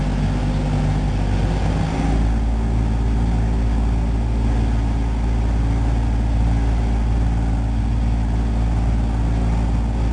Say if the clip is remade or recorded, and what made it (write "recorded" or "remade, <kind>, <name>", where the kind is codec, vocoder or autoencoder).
recorded